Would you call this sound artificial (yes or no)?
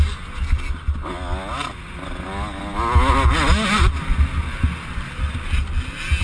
no